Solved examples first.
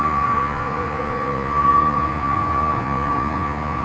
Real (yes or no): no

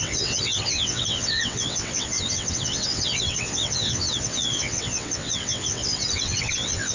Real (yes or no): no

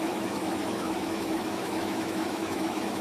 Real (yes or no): no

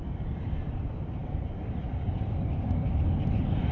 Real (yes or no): yes